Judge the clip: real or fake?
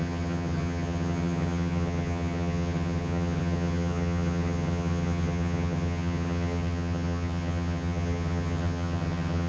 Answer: fake